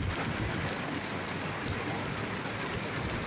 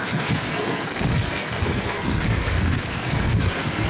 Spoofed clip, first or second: second